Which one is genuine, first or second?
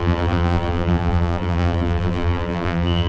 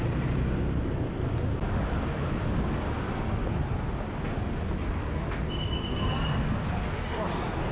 second